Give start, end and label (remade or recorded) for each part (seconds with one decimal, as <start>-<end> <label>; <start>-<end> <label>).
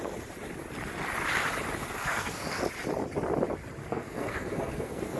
0.0-1.8 recorded; 1.8-2.6 remade; 2.6-3.8 recorded; 3.8-5.2 remade